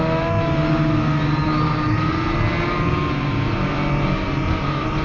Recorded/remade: recorded